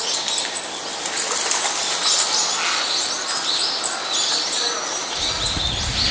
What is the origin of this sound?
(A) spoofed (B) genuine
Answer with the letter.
B